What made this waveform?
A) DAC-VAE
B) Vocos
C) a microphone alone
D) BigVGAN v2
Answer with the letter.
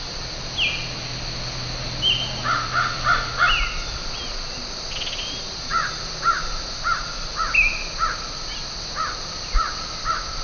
C